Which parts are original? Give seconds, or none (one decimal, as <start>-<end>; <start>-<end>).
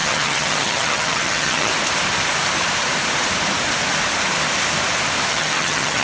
1.7-5.3